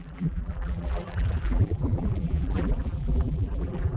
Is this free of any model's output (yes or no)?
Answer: no